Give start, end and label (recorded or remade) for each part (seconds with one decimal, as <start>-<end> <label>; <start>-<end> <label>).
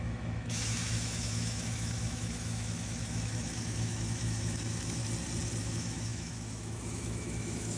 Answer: 0.0-5.0 remade; 5.0-5.6 recorded; 5.6-7.8 remade